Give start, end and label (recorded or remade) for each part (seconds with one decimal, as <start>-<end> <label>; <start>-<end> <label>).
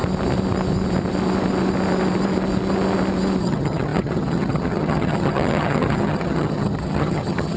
0.0-3.4 recorded; 3.4-7.6 remade